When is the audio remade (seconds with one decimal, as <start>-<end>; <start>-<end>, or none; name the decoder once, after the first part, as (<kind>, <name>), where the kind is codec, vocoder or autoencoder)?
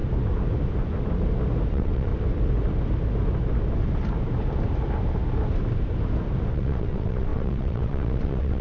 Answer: 1.7-2.1 (vocoder, WaveNeXt); 6.5-8.6